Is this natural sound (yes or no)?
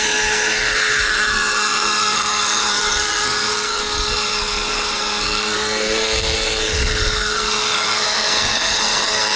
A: no